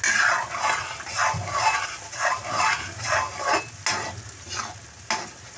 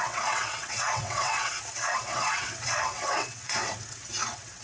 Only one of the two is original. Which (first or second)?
first